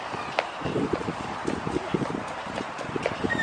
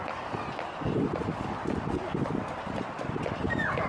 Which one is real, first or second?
second